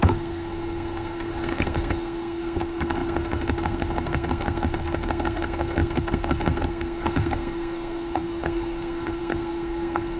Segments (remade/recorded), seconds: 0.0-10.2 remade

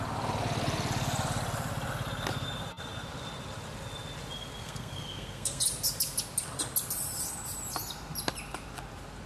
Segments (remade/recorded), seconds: 0.0-4.6 recorded; 4.6-5.6 remade; 5.6-9.3 recorded

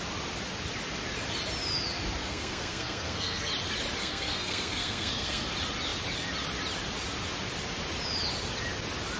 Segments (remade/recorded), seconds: 0.0-2.2 recorded; 2.2-3.5 remade; 3.5-4.0 recorded; 4.0-5.5 remade; 5.5-9.2 recorded

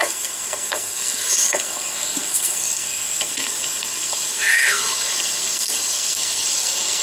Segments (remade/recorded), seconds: 0.0-7.0 remade

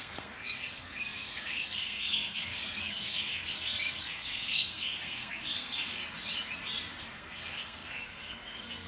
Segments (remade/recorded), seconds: 0.0-6.0 remade; 6.0-7.0 recorded; 7.0-8.9 remade

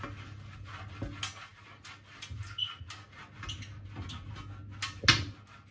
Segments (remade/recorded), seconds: 0.0-5.7 recorded

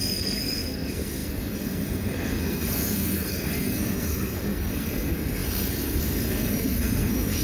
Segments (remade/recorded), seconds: 0.0-7.4 remade

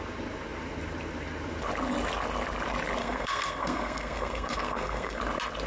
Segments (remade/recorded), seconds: 0.0-3.0 recorded; 3.0-5.2 remade; 5.2-5.7 recorded